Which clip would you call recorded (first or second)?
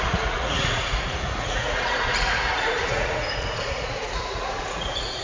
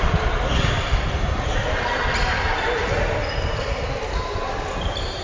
second